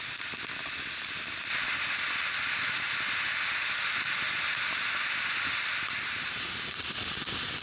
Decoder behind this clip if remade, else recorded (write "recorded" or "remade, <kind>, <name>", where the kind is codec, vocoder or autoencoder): recorded